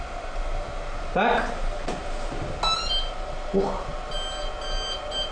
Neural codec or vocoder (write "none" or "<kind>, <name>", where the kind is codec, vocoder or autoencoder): none